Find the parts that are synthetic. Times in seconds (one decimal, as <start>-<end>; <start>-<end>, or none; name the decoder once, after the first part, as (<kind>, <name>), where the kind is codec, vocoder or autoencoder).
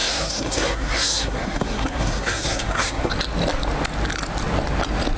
0.0-3.1 (codec, SNAC)